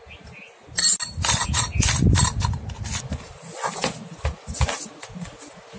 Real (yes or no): yes